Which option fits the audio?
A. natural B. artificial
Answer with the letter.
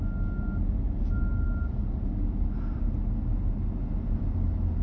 A